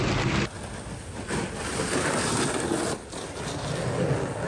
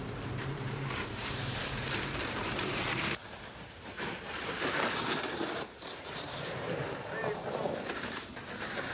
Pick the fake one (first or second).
second